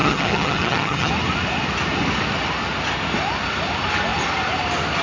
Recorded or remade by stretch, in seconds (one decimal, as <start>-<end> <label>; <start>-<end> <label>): 0.0-1.1 remade; 1.1-5.0 recorded